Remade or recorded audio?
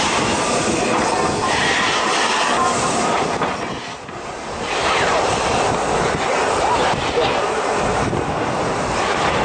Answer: recorded